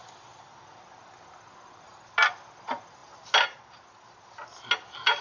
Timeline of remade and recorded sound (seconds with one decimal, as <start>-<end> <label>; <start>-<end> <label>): 0.0-5.2 recorded

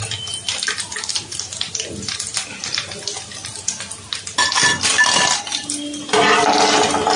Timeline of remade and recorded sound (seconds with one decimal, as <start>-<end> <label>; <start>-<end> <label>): 0.0-7.2 recorded

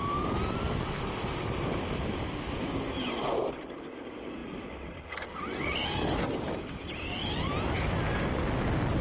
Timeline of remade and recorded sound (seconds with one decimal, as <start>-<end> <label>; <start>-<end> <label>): 0.0-9.0 recorded

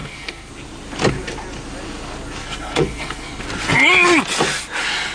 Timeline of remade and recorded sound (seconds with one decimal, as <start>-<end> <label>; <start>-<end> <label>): 0.0-0.5 remade; 0.5-2.4 recorded; 2.4-3.4 remade; 3.4-5.1 recorded